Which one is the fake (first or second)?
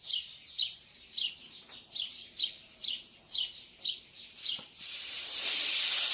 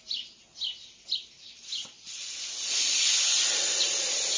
first